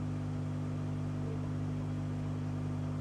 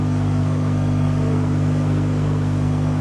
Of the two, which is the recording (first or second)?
first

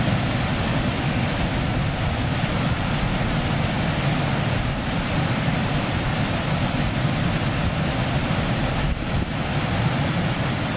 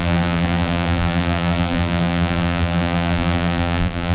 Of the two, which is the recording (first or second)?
first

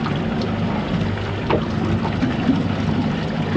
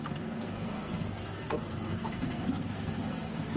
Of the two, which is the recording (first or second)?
first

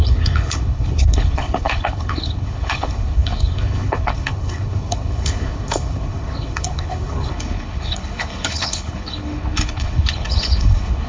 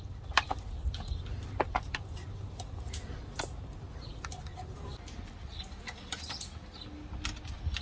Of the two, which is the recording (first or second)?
second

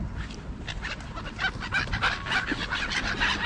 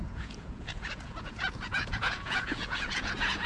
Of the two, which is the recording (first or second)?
first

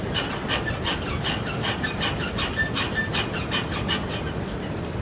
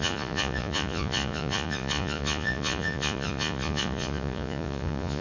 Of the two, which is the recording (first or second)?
first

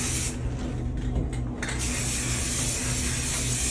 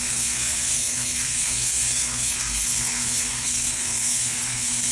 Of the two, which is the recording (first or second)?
first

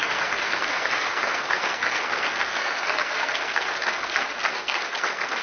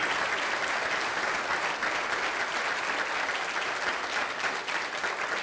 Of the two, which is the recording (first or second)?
second